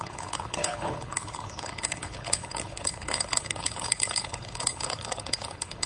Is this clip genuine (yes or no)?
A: no